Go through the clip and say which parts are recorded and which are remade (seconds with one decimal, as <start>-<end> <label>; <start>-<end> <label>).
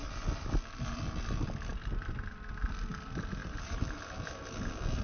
0.0-3.4 recorded; 3.4-4.5 remade; 4.5-5.0 recorded